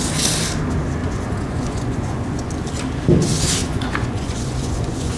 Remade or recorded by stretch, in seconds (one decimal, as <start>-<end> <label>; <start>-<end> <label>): 0.0-1.0 recorded; 1.0-2.5 remade; 2.5-3.6 recorded; 3.6-5.2 remade

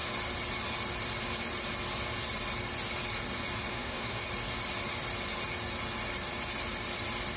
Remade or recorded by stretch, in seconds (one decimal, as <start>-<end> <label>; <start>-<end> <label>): 0.0-3.7 recorded; 3.7-4.2 remade; 4.2-7.4 recorded

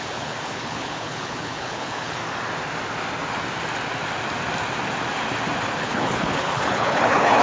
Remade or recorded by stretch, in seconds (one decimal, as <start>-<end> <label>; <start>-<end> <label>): 0.0-2.2 remade; 2.2-5.8 recorded; 5.8-7.4 remade

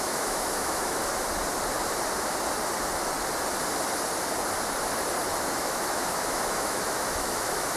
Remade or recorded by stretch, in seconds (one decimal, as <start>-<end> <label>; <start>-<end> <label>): 0.0-1.0 remade; 1.0-5.4 recorded; 5.4-7.8 remade

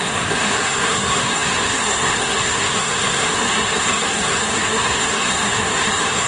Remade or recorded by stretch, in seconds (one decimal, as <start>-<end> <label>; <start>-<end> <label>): 0.0-6.3 remade

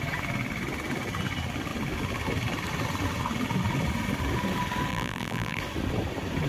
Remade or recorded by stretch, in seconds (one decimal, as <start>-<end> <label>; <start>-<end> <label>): 0.0-4.9 recorded; 4.9-5.6 remade; 5.6-6.5 recorded